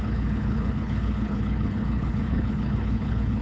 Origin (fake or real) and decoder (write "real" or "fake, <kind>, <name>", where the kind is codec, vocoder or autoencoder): fake, codec, HILCodec